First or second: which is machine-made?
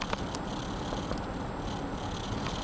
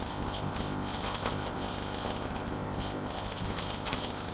second